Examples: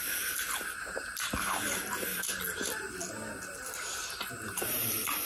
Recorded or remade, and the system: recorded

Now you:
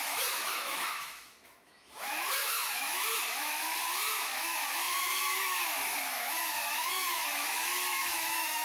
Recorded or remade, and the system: remade, autoencoder, DAC-VAE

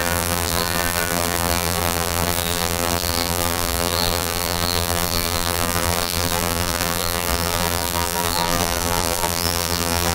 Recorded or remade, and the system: remade, vocoder, BigVGAN v2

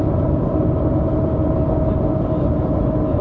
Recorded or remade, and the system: recorded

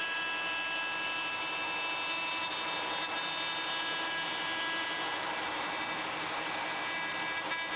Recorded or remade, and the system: recorded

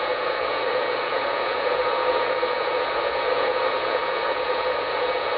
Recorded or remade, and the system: remade, vocoder, Vocos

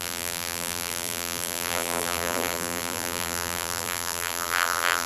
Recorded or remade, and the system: remade, vocoder, BigVGAN v2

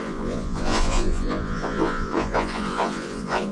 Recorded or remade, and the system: remade, vocoder, Vocos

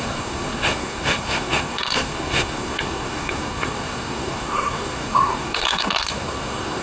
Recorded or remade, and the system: remade, codec, SNAC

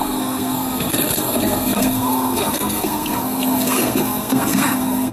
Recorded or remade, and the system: remade, codec, SNAC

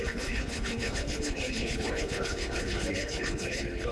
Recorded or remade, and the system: remade, codec, HILCodec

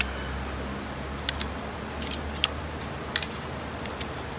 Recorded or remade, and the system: recorded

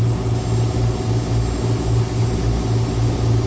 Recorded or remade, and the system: recorded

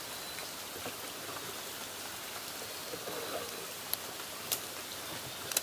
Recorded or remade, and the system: recorded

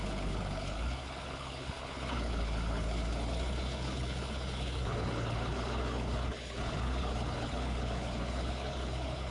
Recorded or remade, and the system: remade, codec, HILCodec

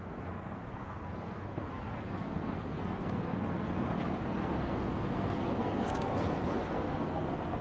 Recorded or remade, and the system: remade, codec, SNAC